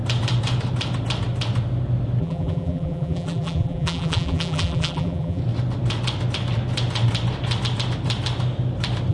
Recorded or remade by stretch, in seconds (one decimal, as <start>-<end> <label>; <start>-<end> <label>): 0.0-2.2 recorded; 2.2-5.4 remade; 5.4-9.1 recorded